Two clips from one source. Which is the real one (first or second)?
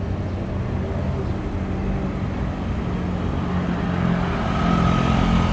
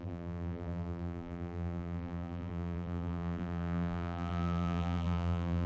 first